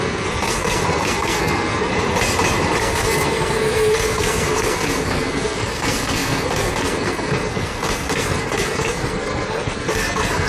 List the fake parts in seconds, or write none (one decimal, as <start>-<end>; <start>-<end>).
0.0-1.9; 2.8-10.5